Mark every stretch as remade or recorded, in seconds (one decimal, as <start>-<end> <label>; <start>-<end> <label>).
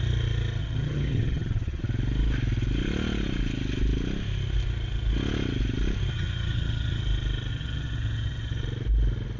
0.0-0.6 recorded; 0.6-1.8 remade; 1.8-6.1 recorded; 6.1-7.0 remade; 7.0-7.5 recorded; 7.5-8.6 remade; 8.6-9.4 recorded